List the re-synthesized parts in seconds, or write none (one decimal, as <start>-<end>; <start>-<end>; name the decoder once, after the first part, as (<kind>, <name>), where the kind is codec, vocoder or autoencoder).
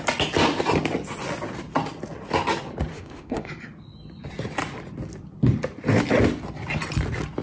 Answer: 2.9-3.5 (autoencoder, DAC-VAE)